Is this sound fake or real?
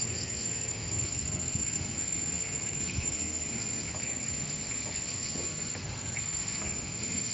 fake